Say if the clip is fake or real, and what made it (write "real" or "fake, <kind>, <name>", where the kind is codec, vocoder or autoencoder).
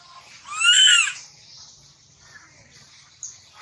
real